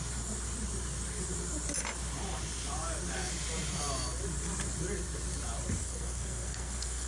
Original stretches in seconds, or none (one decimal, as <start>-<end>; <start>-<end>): 0.0-5.8

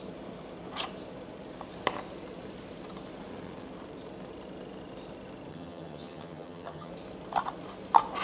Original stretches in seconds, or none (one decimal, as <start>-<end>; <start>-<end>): 0.0-5.5; 6.9-8.2

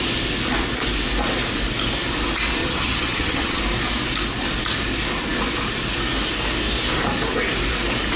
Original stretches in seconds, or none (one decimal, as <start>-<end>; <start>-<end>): 0.0-2.6; 3.6-8.2

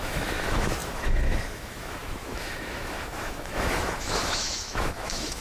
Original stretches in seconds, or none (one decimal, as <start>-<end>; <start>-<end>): none

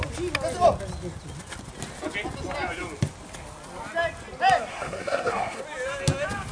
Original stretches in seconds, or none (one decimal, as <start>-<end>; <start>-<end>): 0.0-4.7; 5.6-6.5

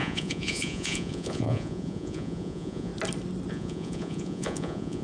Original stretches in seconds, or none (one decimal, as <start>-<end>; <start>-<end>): 2.9-3.5

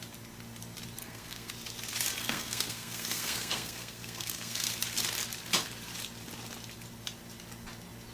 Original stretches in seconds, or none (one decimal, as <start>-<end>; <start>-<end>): 0.0-1.0; 1.5-2.2; 4.7-8.1

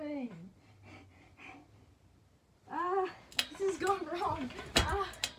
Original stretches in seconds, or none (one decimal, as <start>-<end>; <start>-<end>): 0.0-5.4